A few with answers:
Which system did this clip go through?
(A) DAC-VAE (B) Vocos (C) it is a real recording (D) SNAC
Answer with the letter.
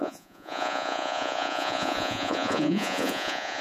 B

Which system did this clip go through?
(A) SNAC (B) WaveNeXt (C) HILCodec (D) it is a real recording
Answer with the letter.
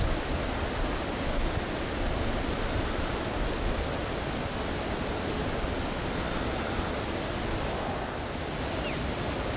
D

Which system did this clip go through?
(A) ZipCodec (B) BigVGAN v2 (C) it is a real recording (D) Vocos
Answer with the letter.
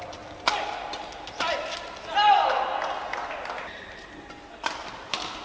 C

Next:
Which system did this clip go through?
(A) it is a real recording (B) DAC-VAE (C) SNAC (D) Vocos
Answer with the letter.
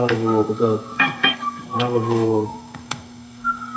C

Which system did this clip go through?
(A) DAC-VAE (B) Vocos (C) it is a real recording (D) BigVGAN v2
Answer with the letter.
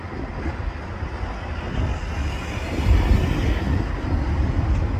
C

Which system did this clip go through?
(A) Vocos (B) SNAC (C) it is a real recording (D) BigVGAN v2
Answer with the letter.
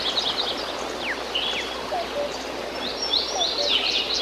C